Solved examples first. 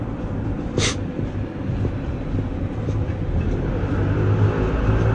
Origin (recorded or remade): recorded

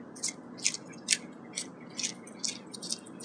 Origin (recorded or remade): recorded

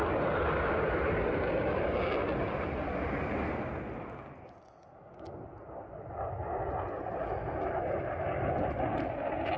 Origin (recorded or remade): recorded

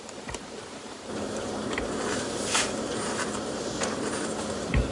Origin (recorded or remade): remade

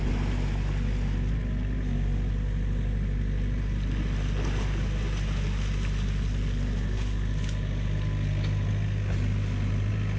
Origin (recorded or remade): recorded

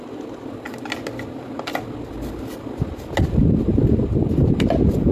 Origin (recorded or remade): recorded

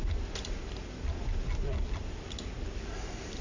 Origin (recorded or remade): remade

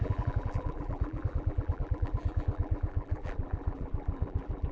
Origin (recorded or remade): remade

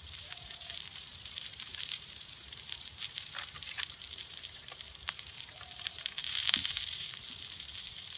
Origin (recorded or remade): remade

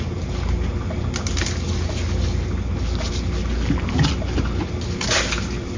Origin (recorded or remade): recorded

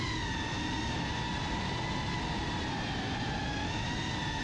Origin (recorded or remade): recorded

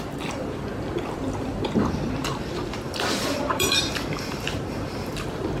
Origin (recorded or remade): remade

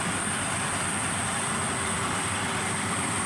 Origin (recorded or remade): remade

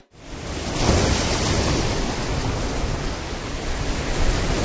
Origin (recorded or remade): recorded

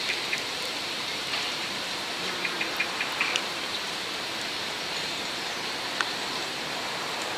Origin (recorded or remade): remade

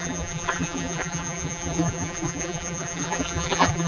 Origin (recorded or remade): remade